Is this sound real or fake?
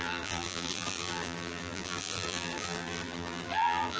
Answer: fake